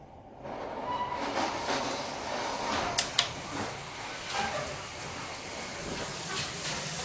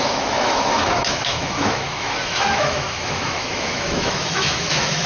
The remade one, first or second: second